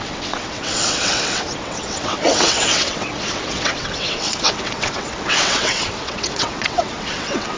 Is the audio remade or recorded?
remade